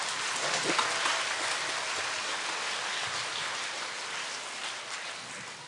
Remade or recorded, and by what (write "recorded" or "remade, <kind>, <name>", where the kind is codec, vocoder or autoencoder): recorded